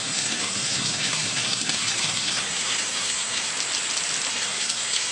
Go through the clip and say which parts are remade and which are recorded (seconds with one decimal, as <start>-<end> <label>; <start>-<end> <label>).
0.0-3.5 remade; 3.5-4.3 recorded; 4.3-5.1 remade